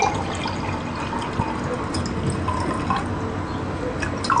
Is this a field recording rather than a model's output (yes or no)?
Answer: yes